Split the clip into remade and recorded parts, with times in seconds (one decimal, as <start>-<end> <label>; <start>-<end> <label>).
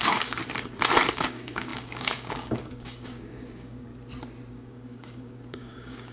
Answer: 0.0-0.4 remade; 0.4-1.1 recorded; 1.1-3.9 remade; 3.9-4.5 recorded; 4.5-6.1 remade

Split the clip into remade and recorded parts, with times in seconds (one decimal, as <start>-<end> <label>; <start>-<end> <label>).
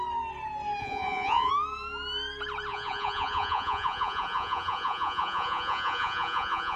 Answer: 0.0-0.8 recorded; 0.8-1.5 remade; 1.5-2.7 recorded; 2.7-6.8 remade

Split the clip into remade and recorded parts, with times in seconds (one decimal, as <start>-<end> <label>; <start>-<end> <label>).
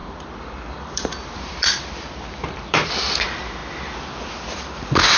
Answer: 0.0-2.9 remade; 2.9-5.2 recorded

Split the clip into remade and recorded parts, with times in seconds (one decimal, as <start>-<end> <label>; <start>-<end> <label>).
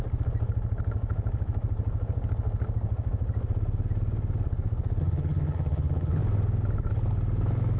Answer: 0.0-5.0 recorded; 5.0-6.2 remade; 6.2-7.8 recorded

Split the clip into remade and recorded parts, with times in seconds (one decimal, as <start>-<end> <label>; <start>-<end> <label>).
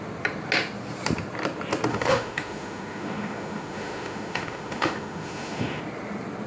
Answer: 0.0-1.9 recorded; 1.9-5.8 remade; 5.8-6.5 recorded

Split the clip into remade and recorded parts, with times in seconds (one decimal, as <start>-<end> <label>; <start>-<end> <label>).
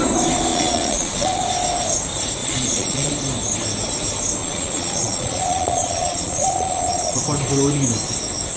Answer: 0.0-0.5 recorded; 0.5-1.4 remade; 1.4-2.4 recorded; 2.4-3.1 remade; 3.1-4.4 recorded; 4.4-7.2 remade; 7.2-8.6 recorded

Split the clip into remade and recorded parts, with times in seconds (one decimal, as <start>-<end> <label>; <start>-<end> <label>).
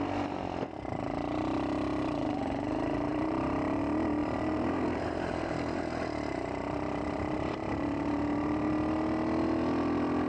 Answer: 0.0-3.1 recorded; 3.1-3.8 remade; 3.8-4.2 recorded; 4.2-8.7 remade; 8.7-10.3 recorded